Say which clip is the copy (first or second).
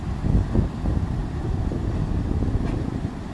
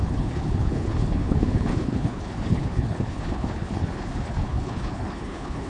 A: second